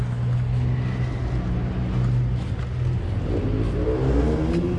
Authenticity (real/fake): real